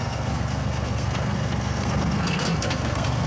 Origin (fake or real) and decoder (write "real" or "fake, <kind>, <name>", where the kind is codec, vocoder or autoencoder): fake, codec, SNAC